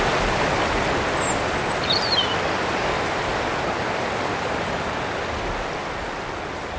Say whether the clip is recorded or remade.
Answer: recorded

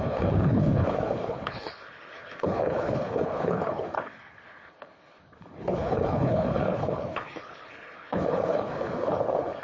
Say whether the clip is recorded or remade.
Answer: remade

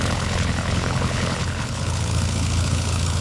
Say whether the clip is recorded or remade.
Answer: remade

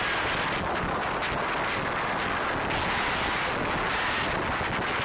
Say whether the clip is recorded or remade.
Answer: recorded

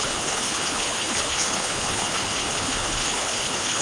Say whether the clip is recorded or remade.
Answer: remade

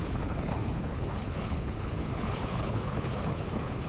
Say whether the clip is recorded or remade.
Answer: remade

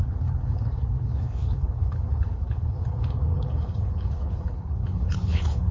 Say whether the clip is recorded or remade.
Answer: remade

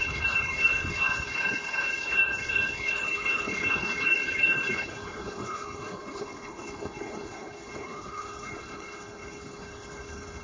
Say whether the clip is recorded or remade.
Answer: remade